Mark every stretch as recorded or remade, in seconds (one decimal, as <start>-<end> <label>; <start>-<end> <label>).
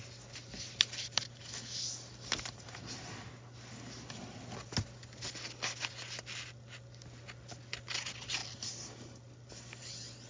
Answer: 0.0-10.3 recorded